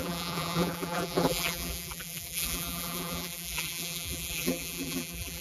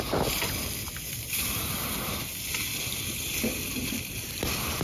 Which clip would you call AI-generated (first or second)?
first